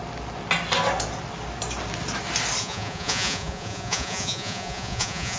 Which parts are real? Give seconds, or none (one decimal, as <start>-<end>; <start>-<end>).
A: 0.0-2.6